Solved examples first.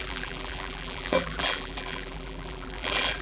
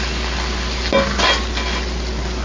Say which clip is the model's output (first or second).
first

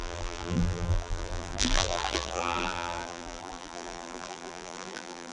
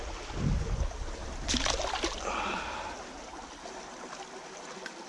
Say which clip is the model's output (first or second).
first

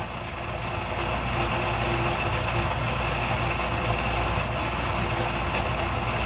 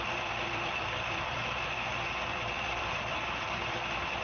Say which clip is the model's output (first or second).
second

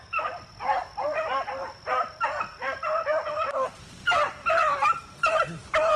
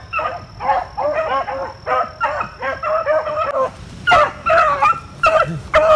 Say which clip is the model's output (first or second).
first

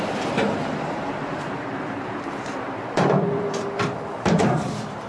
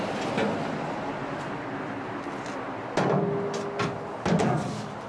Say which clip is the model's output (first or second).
first